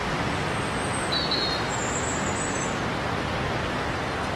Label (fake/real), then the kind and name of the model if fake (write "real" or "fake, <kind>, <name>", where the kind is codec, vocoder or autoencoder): real